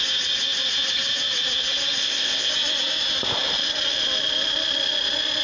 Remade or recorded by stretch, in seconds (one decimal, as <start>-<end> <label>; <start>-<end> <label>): 0.0-2.0 recorded; 2.0-2.5 remade; 2.5-5.4 recorded